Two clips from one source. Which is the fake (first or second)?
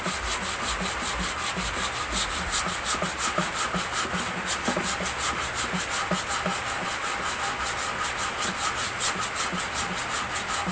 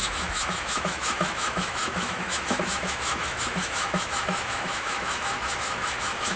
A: second